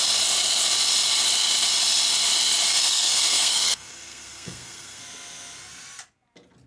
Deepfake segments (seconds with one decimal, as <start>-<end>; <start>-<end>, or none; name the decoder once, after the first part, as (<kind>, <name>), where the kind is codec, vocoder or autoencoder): 2.7-5.0 (codec, SNAC)